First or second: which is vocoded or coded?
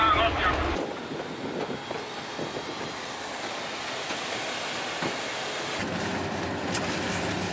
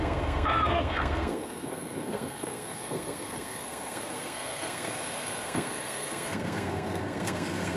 second